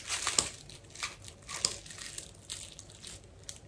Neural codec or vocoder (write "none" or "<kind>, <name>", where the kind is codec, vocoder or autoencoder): none